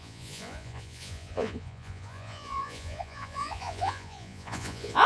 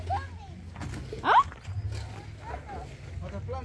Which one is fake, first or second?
first